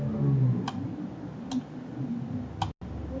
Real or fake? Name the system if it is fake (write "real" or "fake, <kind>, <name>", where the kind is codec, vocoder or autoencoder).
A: real